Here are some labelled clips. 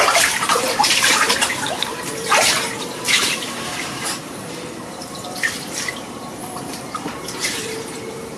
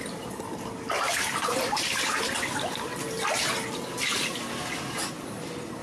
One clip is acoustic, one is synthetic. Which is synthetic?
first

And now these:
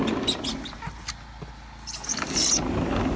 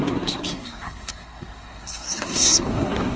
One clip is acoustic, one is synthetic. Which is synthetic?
second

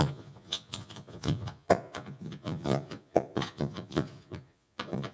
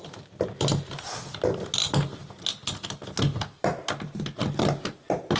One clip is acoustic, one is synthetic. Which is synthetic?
first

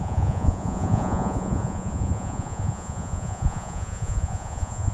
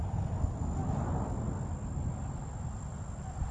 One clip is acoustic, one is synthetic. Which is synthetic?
first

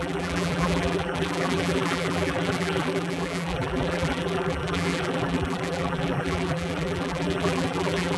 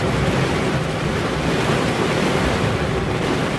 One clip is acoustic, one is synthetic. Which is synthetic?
first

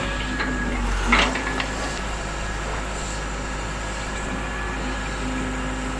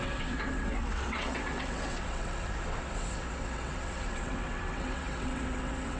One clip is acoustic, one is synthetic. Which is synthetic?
second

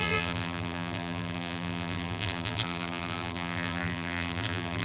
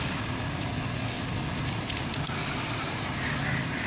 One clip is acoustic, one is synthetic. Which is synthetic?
first